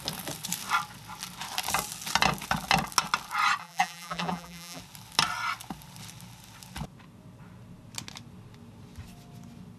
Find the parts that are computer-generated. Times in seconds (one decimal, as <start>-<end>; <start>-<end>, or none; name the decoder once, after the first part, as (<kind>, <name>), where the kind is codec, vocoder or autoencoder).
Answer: 3.6-4.8 (vocoder, BigVGAN v2)